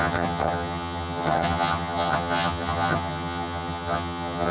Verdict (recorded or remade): remade